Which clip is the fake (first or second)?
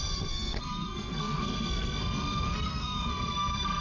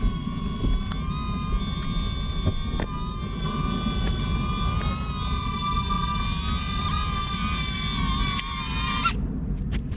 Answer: first